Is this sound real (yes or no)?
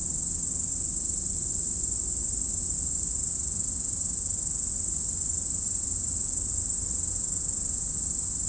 yes